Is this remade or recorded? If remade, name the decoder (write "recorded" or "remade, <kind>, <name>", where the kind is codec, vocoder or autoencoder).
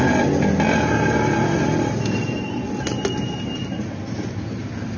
recorded